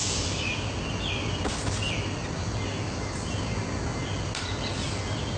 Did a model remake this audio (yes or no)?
no